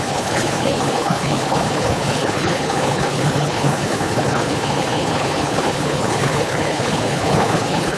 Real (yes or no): no